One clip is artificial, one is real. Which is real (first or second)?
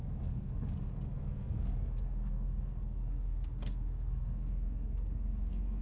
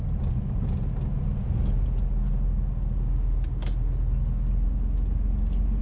second